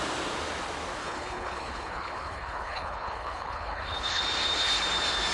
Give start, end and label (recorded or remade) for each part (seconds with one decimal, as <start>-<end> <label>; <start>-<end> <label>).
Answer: 0.0-1.0 recorded; 1.0-4.2 remade; 4.2-5.3 recorded